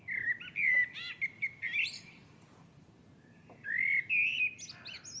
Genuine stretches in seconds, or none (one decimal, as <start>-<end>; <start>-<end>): 0.0-0.8; 3.0-5.2